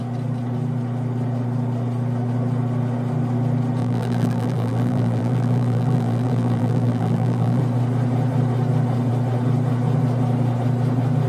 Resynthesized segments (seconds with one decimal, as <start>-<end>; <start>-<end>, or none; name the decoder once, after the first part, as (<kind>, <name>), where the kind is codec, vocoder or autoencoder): 3.8-7.6 (vocoder, BigVGAN v2)